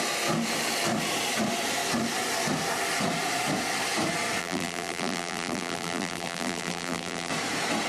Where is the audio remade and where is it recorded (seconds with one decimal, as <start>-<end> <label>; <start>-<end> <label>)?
0.0-4.4 recorded; 4.4-7.3 remade; 7.3-7.9 recorded